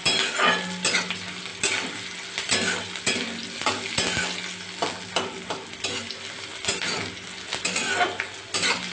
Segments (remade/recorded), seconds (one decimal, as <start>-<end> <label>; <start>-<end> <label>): 0.0-8.9 recorded